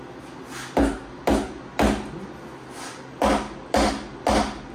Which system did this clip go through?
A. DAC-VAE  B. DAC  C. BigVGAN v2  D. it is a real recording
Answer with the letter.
D